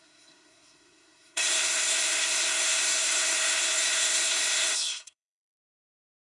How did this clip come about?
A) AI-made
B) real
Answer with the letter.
A